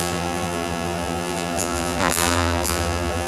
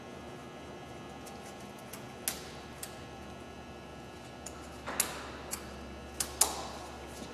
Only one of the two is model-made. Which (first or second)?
first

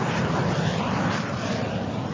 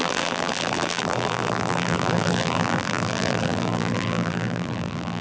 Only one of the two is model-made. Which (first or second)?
second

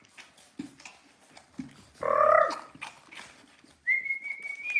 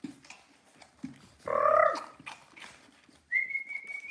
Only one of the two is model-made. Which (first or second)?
second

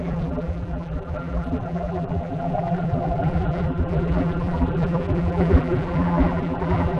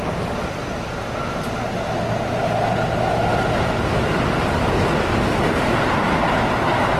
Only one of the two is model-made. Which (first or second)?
first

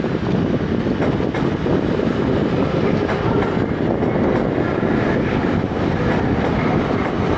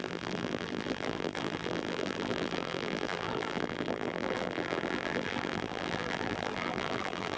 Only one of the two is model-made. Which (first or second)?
second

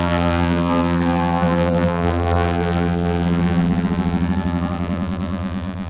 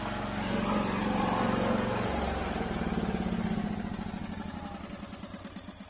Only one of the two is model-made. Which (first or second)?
first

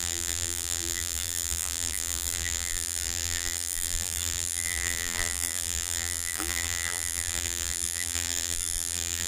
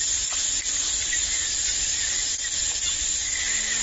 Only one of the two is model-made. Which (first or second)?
first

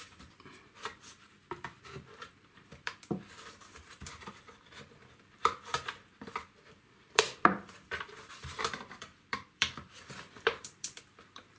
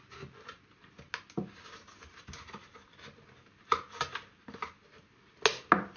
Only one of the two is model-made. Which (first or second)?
first